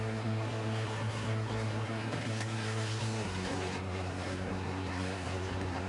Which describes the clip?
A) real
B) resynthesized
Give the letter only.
B